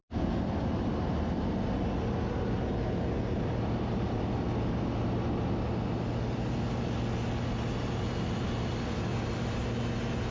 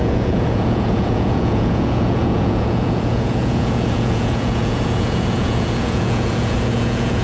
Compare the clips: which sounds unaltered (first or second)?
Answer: first